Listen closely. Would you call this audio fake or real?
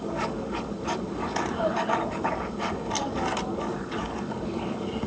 fake